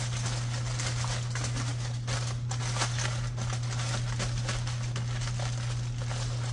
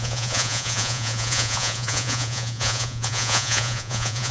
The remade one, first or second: second